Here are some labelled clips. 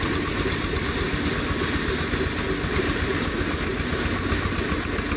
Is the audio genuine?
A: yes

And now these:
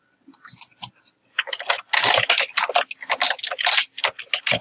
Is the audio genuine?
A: yes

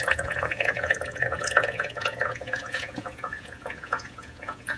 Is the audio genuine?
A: no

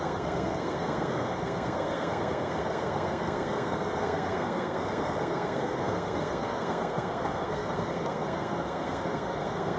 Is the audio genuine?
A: no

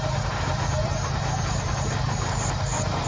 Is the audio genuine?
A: no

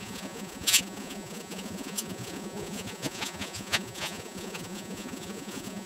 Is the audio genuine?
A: no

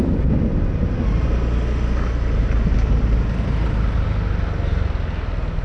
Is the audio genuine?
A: yes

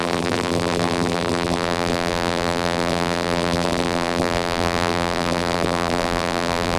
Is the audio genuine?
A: no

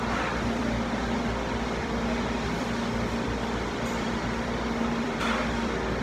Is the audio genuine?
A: no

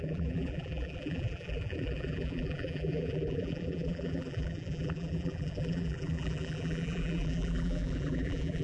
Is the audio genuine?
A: no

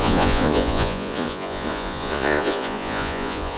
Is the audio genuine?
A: no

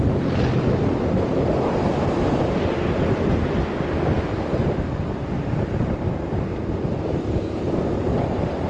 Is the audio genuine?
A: no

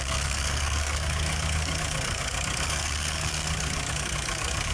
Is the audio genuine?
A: no